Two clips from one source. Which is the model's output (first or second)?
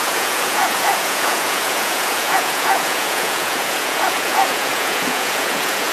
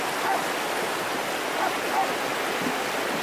first